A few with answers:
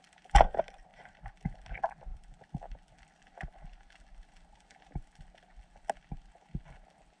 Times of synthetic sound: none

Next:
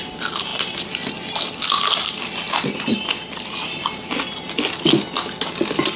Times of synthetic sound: none

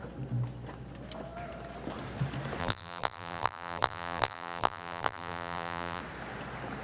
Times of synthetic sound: 2.6-6.0 (vocoder, BigVGAN v2)